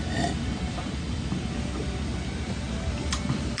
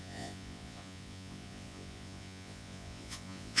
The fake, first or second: second